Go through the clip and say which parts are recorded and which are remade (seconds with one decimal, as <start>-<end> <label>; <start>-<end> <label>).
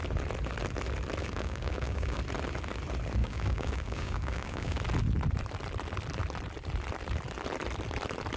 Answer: 0.0-1.2 recorded; 1.2-2.2 remade; 2.2-3.2 recorded; 3.2-4.8 remade; 4.8-8.4 recorded